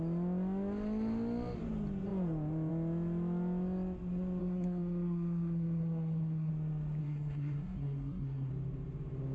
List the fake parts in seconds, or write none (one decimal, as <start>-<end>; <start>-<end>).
4.4-6.5; 7.0-8.5